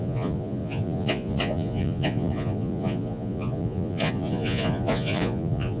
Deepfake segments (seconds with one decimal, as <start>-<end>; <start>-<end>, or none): 0.0-5.8